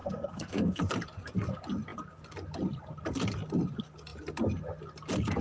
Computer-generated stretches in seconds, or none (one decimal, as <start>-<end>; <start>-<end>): 0.0-0.8